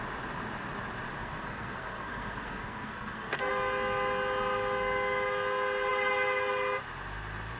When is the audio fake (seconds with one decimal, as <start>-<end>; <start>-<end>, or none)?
1.2-3.5